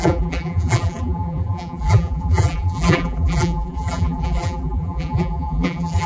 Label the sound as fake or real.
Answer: fake